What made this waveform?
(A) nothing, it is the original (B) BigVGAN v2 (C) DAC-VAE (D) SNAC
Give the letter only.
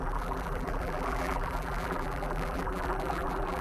B